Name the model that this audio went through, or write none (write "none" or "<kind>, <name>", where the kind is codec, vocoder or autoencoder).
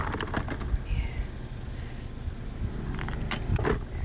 none